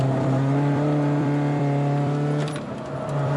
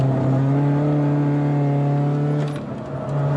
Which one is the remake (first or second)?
first